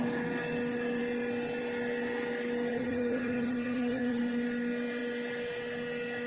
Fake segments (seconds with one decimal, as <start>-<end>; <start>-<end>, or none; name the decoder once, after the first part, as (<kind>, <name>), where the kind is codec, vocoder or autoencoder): 2.7-4.2 (vocoder, HiFi-GAN)